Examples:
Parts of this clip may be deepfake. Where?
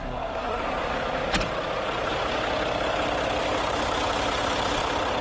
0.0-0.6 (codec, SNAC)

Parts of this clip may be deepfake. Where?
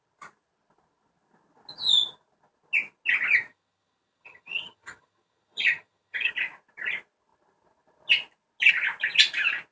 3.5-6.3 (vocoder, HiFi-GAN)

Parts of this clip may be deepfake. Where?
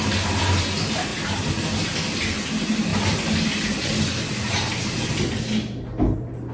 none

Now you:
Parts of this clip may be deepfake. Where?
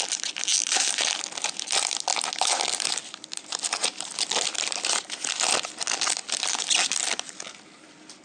none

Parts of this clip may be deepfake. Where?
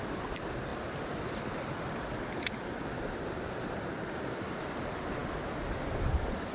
none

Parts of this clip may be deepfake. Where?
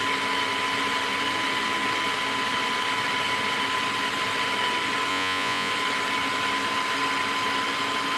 5.1-5.7 (vocoder, Vocos)